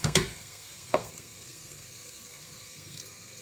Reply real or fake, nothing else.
fake